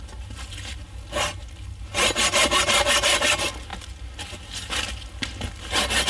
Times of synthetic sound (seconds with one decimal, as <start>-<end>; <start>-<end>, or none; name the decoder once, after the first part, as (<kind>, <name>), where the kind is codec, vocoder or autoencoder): none